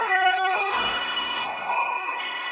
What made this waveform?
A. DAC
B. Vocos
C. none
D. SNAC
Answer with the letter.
D